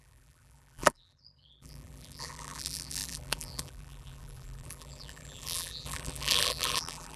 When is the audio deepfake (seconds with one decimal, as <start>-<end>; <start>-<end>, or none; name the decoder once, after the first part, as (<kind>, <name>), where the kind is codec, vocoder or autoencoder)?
0.0-7.2 (vocoder, BigVGAN v2)